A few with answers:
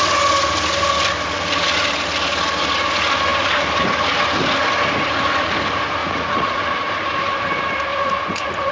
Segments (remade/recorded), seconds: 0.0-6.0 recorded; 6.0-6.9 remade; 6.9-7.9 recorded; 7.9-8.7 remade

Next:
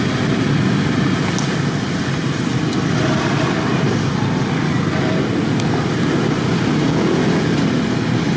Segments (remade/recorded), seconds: 0.0-6.8 recorded; 6.8-7.5 remade; 7.5-8.4 recorded

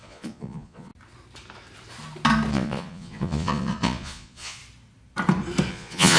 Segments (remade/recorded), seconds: 0.0-0.9 remade; 0.9-2.5 recorded; 2.5-4.6 remade; 4.6-5.7 recorded; 5.7-6.2 remade

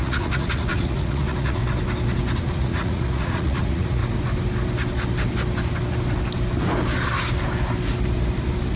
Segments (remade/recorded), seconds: 0.0-1.6 remade; 1.6-2.4 recorded; 2.4-4.0 remade; 4.0-8.8 recorded

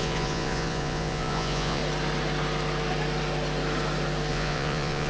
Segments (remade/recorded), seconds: 0.0-1.8 remade; 1.8-4.3 recorded; 4.3-5.1 remade

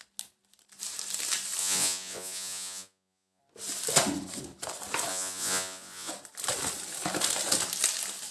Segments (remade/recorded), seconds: 0.0-1.6 recorded; 1.6-3.4 remade; 3.4-5.1 recorded; 5.1-6.1 remade; 6.1-8.3 recorded